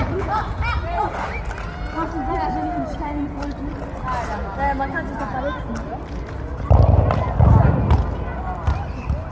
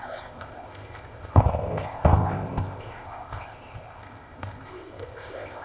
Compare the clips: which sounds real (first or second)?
first